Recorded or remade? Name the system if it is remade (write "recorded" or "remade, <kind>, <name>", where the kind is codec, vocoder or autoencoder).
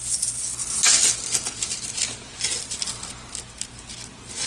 recorded